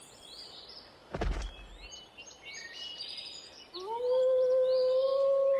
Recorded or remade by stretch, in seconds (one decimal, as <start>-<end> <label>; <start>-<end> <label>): 0.0-5.6 recorded